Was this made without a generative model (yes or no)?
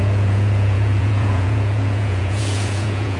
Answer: no